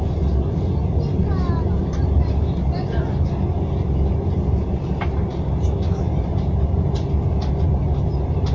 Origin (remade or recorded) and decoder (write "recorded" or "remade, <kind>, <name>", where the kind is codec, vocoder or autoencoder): recorded